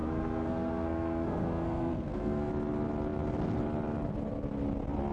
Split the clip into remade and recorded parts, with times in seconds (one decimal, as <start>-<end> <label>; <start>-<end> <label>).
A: 0.0-2.5 remade; 2.5-5.1 recorded